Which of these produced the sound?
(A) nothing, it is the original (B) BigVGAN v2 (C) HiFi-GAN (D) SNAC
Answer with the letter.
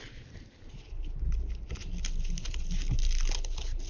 A